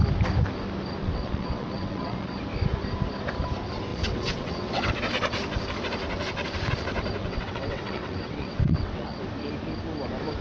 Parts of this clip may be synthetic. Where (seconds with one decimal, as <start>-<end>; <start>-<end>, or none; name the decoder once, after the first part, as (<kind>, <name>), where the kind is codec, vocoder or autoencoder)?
1.0-2.4 (vocoder, WaveNeXt); 3.9-4.9; 7.2-9.2

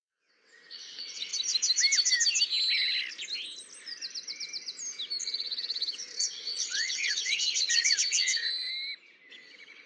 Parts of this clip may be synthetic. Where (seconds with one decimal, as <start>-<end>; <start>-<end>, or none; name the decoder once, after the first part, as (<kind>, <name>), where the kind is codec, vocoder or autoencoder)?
0.0-1.3 (vocoder, WaveNeXt); 5.2-8.7; 9.3-9.9

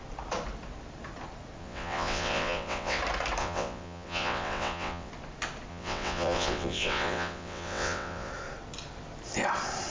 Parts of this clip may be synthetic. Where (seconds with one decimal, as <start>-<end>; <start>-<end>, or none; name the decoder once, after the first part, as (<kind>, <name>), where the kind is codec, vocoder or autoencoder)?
1.6-3.0 (vocoder, WaveNeXt); 3.4-5.1; 5.7-8.3

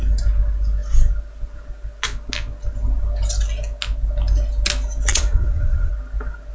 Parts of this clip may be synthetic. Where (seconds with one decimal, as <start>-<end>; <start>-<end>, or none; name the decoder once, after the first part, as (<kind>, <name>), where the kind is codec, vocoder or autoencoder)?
5.1-5.9 (vocoder, WaveNeXt)

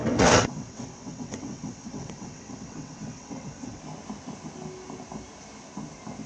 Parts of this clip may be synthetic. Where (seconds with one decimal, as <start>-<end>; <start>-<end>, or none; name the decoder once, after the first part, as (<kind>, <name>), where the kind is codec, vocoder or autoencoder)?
0.0-3.8 (vocoder, WaveNeXt)

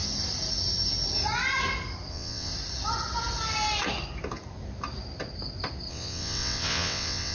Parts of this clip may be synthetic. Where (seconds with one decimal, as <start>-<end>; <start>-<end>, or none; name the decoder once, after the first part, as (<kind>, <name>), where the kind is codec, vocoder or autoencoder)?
2.1-2.5 (vocoder, WaveNeXt); 5.9-7.3

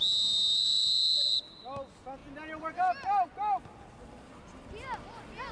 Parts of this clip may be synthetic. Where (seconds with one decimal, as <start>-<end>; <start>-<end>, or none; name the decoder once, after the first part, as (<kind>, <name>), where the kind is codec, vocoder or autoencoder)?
none

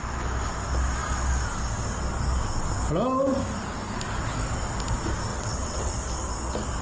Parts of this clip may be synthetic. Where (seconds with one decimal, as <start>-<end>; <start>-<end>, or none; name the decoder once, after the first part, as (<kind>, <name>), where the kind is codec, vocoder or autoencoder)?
5.3-5.9 (vocoder, WaveNeXt)